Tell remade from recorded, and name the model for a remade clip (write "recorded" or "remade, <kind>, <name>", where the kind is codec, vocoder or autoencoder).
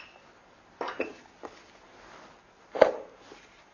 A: recorded